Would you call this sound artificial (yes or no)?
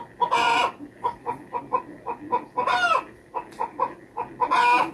no